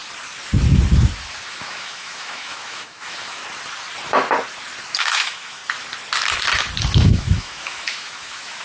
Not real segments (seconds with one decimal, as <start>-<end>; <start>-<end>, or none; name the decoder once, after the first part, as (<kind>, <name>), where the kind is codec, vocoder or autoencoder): 1.5-3.4 (autoencoder, DAC-VAE); 5.0-5.6; 6.8-8.6